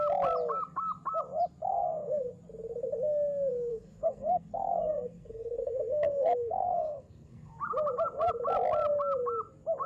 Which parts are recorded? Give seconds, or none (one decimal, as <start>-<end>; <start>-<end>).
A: 0.0-1.7; 2.3-3.7; 7.6-9.9